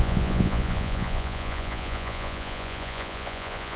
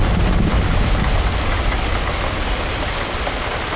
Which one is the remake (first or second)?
first